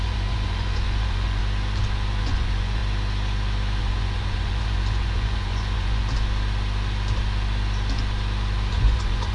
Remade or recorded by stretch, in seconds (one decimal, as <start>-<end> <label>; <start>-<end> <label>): 0.0-1.4 remade; 1.4-2.2 recorded; 2.2-2.8 remade; 2.8-3.8 recorded; 3.8-6.0 remade; 6.0-8.7 recorded; 8.7-9.3 remade